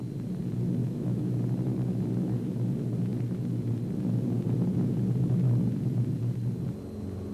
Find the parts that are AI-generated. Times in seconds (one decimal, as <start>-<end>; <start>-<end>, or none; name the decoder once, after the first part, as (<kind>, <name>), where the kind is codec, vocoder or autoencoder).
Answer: 0.8-1.3 (autoencoder, DAC-VAE)